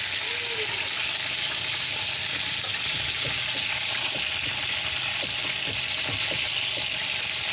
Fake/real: real